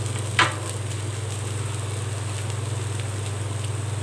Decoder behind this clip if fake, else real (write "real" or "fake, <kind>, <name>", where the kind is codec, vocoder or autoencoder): real